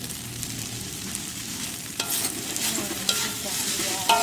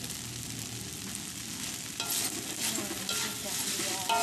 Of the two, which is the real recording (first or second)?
second